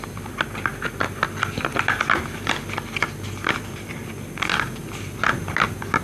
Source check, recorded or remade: recorded